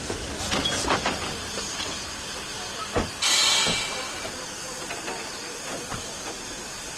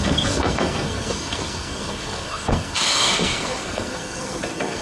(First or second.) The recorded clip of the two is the first